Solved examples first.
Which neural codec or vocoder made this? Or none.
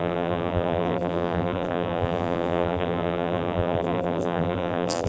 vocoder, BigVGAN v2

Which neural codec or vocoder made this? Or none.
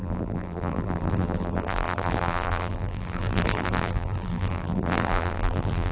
vocoder, BigVGAN v2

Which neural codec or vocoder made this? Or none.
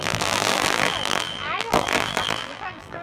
vocoder, BigVGAN v2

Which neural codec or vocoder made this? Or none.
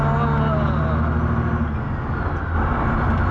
none